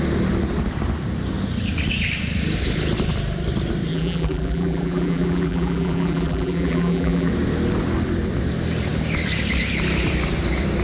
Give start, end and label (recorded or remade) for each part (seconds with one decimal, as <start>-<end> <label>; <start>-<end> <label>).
0.0-3.9 recorded; 3.9-7.3 remade; 7.3-10.8 recorded